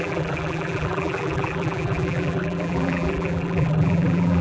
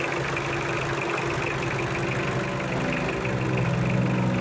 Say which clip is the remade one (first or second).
first